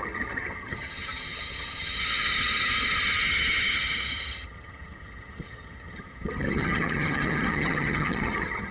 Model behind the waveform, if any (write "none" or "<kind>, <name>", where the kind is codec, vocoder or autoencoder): vocoder, HiFi-GAN